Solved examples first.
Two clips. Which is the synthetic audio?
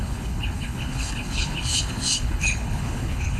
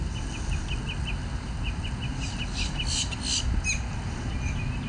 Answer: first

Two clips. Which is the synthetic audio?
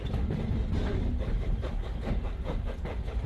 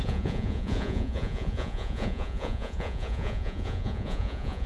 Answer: second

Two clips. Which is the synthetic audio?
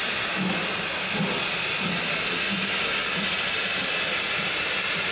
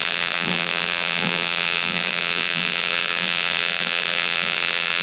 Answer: second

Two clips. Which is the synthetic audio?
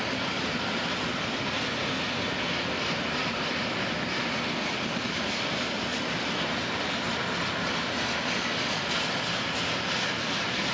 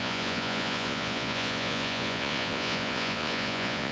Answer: second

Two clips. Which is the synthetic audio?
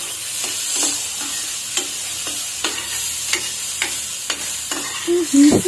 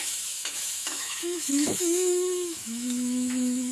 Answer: second